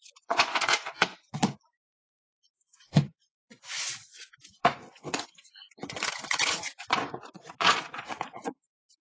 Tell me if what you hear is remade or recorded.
remade